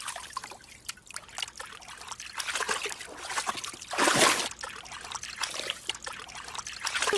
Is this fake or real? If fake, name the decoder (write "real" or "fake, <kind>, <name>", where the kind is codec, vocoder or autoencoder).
real